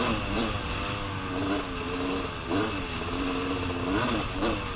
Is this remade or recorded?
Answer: recorded